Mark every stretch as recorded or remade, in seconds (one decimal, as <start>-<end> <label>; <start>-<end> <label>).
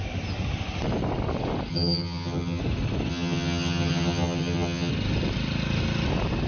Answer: 0.0-1.7 recorded; 1.7-2.6 remade; 2.6-3.1 recorded; 3.1-4.9 remade; 4.9-6.5 recorded